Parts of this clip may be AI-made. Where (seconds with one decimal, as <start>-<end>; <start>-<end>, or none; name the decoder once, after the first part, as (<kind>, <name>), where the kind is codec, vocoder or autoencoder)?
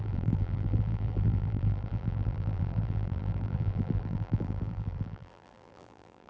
0.0-6.3 (vocoder, BigVGAN v2)